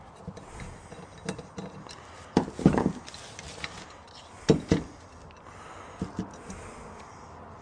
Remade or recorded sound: recorded